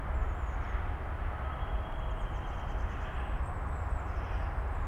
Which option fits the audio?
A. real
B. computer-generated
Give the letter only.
A